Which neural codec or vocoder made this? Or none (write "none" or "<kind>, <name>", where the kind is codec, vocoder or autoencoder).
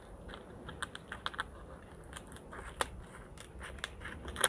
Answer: none